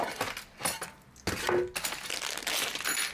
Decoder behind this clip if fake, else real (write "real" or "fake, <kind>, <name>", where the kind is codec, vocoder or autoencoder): real